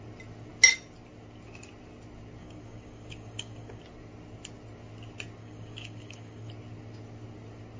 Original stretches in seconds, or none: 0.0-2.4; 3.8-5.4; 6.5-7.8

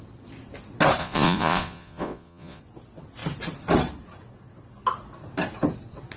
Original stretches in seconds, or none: 0.0-1.0; 2.6-6.2

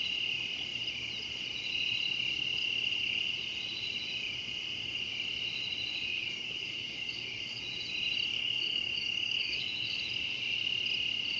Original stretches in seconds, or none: 0.0-6.1; 7.6-8.3; 10.0-11.4

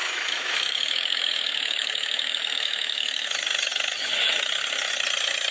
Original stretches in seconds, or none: 3.3-5.5

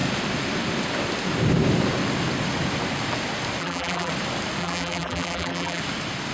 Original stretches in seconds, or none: 0.0-3.6; 4.1-4.6; 5.8-6.3